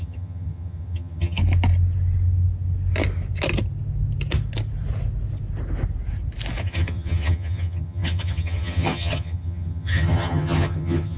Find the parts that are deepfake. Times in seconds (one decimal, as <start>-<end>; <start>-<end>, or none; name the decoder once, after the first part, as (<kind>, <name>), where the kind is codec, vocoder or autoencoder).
0.0-1.4 (vocoder, HiFi-GAN); 6.6-11.2